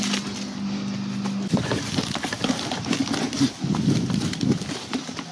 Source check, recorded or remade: recorded